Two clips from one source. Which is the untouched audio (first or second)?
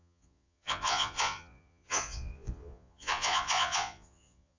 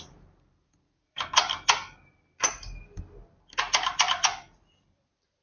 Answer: second